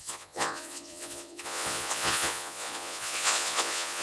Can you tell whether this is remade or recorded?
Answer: remade